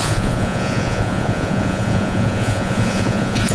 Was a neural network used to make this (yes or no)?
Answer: yes